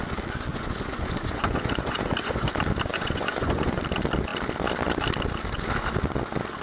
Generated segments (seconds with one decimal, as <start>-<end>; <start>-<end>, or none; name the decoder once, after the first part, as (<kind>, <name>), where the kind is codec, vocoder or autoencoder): 0.5-2.5 (vocoder, Vocos); 2.9-3.8